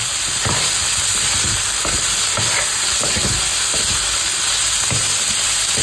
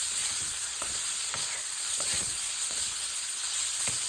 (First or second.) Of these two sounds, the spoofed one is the second